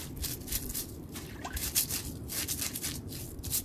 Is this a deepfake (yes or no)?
no